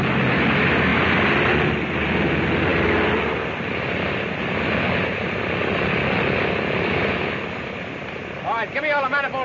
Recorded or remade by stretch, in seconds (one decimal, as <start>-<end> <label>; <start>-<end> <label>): 0.0-9.4 recorded

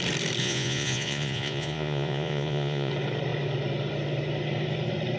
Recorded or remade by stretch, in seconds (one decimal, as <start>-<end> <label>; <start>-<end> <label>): 0.0-0.4 recorded; 0.4-2.9 remade; 2.9-5.2 recorded

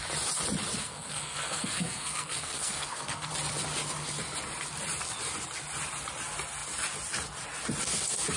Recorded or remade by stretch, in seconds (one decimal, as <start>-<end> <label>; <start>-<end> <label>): 0.0-0.8 recorded; 0.8-3.3 remade; 3.3-8.4 recorded

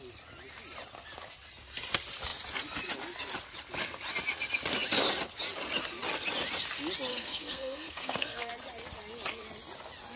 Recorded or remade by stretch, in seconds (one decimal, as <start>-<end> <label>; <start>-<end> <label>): 0.0-7.1 recorded; 7.1-8.5 remade; 8.5-10.2 recorded

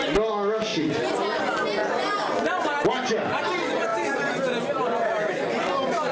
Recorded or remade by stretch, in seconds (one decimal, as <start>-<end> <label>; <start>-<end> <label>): 0.0-6.1 recorded

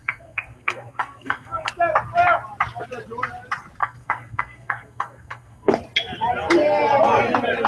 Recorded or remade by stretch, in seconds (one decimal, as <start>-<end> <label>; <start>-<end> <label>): 0.0-1.7 remade; 1.7-3.8 recorded; 3.8-5.7 remade; 5.7-7.7 recorded